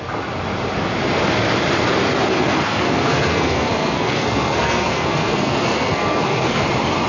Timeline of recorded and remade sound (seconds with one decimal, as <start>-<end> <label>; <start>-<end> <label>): 0.0-2.3 recorded; 2.3-6.6 remade; 6.6-7.1 recorded